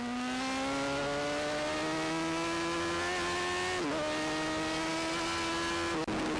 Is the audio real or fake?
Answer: real